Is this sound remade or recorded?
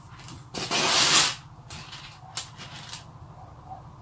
recorded